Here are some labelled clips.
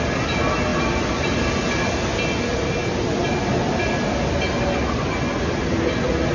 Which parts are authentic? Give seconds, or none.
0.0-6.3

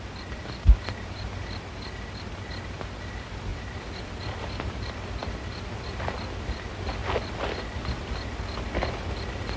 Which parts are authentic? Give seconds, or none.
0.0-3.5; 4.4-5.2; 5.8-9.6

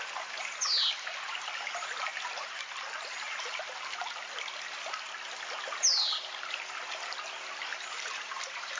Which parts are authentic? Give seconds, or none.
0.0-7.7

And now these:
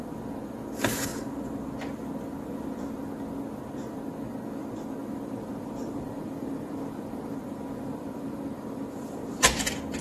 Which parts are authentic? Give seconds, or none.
0.0-5.0; 9.6-10.0

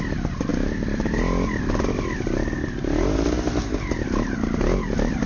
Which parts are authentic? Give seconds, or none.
0.0-5.3

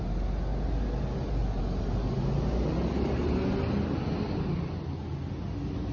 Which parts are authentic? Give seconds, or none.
0.0-5.9